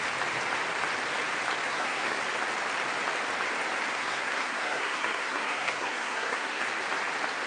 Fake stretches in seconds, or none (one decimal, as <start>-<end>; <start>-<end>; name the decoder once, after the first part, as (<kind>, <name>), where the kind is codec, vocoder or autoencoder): 1.7-2.2 (codec, SNAC); 3.9-6.6